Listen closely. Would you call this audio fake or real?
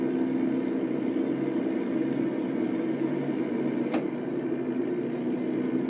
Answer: real